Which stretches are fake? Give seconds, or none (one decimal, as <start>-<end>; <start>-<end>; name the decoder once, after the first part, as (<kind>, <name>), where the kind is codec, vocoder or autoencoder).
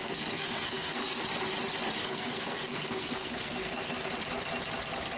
0.0-1.2 (codec, SNAC); 2.0-3.9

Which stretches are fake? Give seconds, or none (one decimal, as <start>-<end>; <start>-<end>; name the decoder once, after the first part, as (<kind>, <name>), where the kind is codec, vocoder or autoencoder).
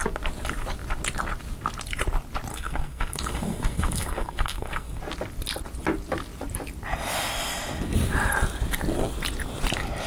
2.5-5.0 (codec, SNAC)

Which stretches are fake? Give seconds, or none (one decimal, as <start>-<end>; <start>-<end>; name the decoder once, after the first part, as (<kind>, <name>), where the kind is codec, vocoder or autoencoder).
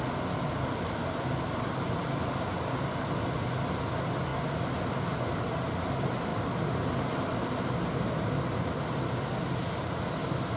none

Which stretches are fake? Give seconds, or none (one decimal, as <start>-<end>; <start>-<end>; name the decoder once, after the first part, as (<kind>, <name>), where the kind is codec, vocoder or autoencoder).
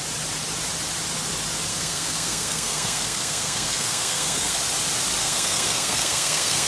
1.7-4.6 (codec, SNAC); 5.2-6.7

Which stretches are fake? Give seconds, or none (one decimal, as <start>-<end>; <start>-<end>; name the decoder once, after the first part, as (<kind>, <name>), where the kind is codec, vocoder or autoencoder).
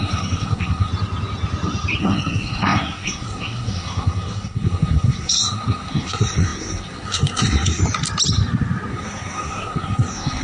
0.0-0.9 (codec, SNAC); 2.0-7.8; 8.9-10.4